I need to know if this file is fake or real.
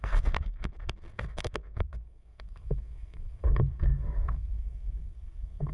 fake